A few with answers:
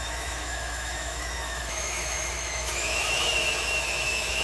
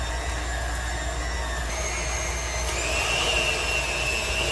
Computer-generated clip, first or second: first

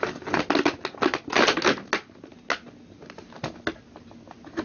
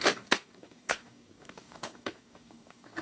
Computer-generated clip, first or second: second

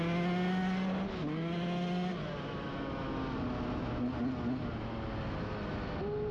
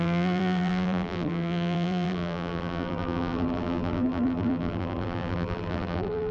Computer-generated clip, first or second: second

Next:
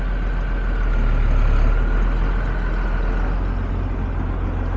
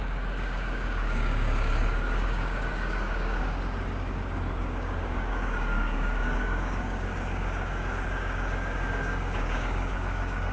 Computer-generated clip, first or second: second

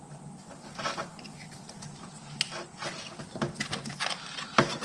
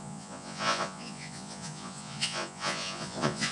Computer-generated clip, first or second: second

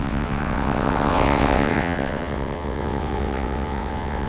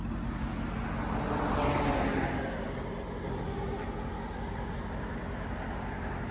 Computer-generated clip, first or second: first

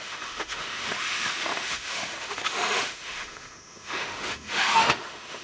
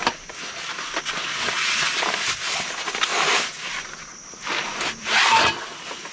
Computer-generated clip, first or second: first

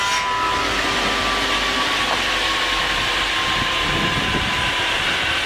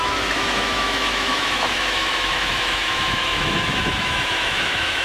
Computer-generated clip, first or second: second